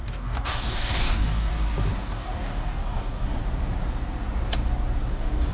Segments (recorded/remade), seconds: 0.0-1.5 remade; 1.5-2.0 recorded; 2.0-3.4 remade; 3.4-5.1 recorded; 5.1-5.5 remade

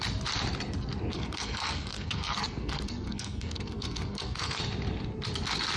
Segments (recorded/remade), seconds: 0.0-1.1 recorded; 1.1-4.6 remade; 4.6-5.8 recorded

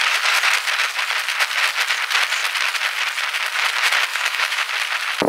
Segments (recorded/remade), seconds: 0.0-4.1 recorded; 4.1-4.7 remade; 4.7-5.3 recorded

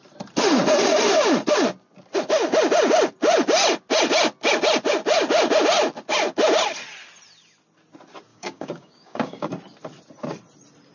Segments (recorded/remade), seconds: 0.0-8.3 recorded; 8.3-9.5 remade; 9.5-10.9 recorded

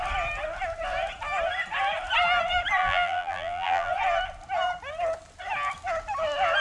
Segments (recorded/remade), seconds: 0.0-2.8 recorded; 2.8-3.9 remade; 3.9-6.6 recorded

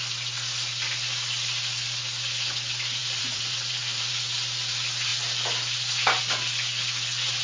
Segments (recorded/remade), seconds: 0.0-3.0 recorded; 3.0-4.1 remade; 4.1-7.4 recorded